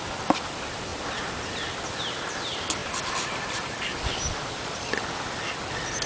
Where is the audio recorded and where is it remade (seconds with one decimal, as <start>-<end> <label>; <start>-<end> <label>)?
0.0-6.1 recorded